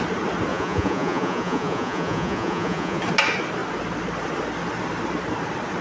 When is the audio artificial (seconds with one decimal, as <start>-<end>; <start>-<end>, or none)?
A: 0.5-3.0